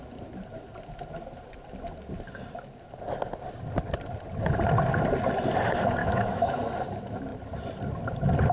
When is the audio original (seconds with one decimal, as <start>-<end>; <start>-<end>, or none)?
0.0-6.0; 6.6-8.5